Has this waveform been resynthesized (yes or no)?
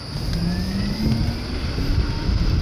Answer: no